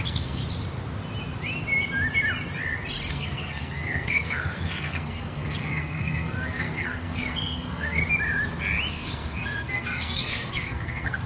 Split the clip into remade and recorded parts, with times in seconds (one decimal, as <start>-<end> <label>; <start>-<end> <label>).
0.0-0.4 remade; 0.4-3.1 recorded; 3.1-8.0 remade; 8.0-8.9 recorded; 8.9-11.3 remade